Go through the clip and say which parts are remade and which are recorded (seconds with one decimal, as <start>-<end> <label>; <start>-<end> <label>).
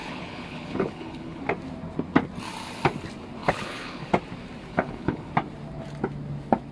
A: 0.0-1.4 remade; 1.4-3.4 recorded; 3.4-4.1 remade; 4.1-4.7 recorded; 4.7-5.3 remade; 5.3-6.7 recorded